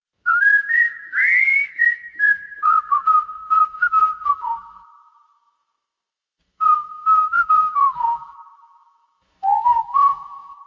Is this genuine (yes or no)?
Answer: no